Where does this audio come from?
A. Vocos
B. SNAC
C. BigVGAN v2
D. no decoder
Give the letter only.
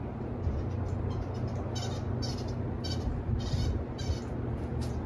D